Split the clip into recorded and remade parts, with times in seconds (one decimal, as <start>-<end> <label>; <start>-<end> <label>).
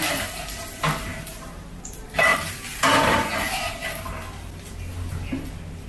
0.0-1.1 recorded; 1.1-1.7 remade; 1.7-2.3 recorded; 2.3-3.7 remade; 3.7-5.9 recorded